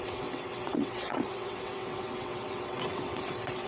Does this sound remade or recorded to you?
remade